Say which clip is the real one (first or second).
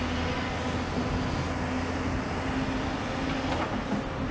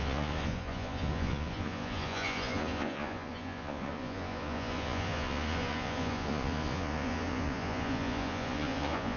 first